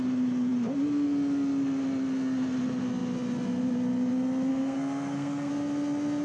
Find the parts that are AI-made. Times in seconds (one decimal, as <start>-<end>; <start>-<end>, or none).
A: 4.5-5.5